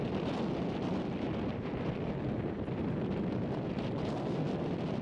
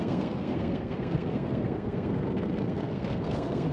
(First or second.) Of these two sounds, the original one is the first